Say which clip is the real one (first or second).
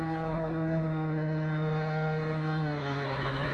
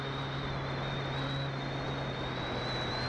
second